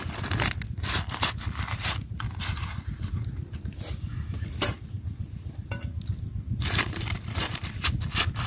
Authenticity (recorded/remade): remade